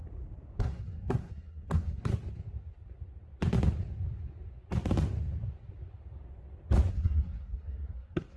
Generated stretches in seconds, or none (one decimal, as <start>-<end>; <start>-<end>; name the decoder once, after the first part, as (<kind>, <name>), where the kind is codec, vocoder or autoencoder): 0.6-2.1 (codec, SNAC); 6.9-8.4